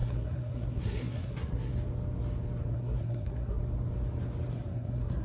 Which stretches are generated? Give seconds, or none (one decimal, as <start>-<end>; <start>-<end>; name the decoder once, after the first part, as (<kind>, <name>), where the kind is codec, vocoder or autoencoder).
0.0-1.7 (codec, SNAC); 2.7-3.6; 4.5-5.2